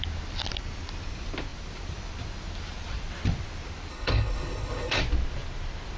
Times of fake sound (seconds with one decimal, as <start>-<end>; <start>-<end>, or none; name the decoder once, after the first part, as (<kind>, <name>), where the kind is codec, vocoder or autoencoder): 3.9-5.0 (codec, HILCodec)